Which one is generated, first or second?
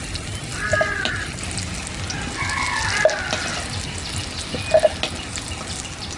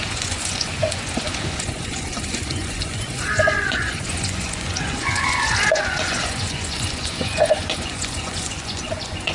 second